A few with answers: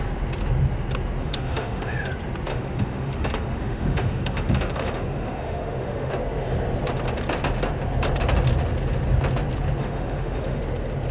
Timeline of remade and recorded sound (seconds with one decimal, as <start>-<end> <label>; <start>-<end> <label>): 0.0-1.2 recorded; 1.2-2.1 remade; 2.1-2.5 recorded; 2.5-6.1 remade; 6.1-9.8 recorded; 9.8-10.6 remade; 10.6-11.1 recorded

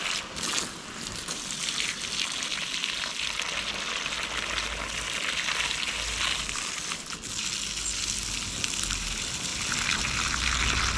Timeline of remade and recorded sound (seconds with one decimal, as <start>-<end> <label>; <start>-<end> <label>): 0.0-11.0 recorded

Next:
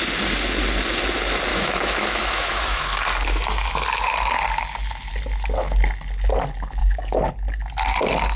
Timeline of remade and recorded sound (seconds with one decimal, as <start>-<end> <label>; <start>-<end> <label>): 0.0-1.5 recorded; 1.5-2.8 remade; 2.8-6.8 recorded; 6.8-7.3 remade; 7.3-8.4 recorded